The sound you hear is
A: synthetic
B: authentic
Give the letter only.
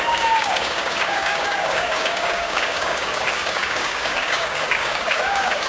A